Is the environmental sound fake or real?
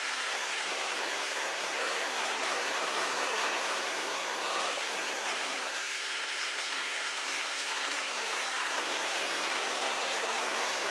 fake